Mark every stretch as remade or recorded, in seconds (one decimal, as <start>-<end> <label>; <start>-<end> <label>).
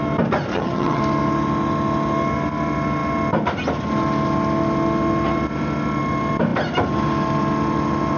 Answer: 0.0-0.5 recorded; 0.5-1.0 remade; 1.0-8.2 recorded